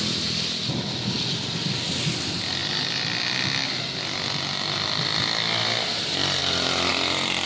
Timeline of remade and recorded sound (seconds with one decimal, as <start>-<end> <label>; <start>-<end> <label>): 0.0-7.5 recorded